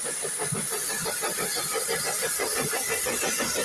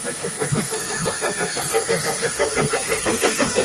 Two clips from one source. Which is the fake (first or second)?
second